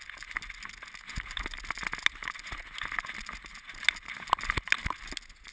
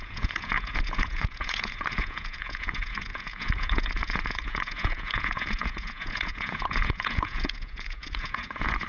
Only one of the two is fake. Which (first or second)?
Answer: second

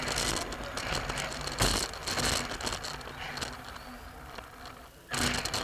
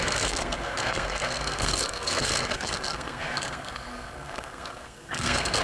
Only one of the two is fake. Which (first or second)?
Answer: second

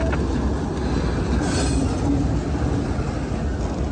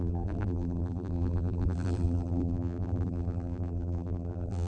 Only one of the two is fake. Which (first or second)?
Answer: second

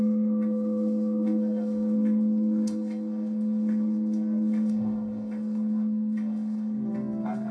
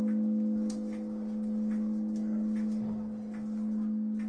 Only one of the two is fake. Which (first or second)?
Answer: first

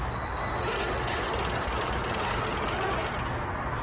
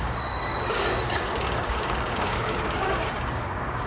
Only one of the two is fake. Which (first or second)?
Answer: second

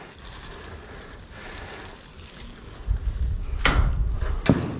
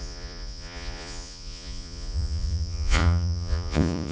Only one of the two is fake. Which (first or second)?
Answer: second